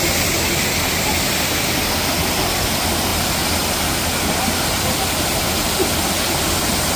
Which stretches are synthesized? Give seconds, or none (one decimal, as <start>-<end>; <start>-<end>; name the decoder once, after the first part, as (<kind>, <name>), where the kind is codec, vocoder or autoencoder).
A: none